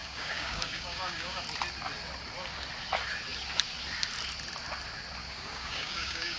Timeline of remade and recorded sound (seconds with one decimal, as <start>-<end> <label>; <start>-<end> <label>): 0.0-1.4 remade; 1.4-5.2 recorded; 5.2-6.4 remade